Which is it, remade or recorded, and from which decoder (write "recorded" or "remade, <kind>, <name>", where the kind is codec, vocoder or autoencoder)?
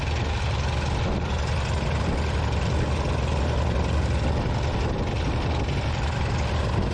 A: recorded